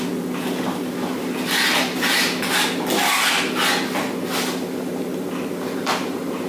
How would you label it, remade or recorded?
recorded